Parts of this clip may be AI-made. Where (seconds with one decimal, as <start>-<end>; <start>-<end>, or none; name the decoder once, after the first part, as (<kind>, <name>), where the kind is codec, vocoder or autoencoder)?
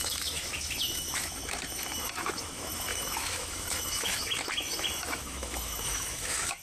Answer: 0.0-6.6 (autoencoder, DAC-VAE)